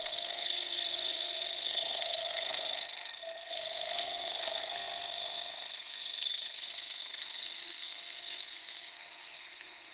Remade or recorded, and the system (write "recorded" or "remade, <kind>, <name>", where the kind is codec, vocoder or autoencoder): remade, codec, SNAC